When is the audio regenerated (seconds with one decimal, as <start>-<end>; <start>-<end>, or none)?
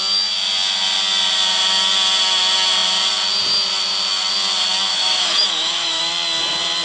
4.9-6.0